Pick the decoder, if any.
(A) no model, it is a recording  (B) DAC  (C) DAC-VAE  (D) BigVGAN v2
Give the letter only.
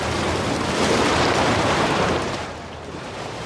D